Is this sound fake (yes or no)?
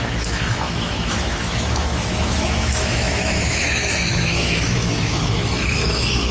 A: yes